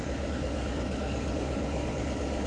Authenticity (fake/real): fake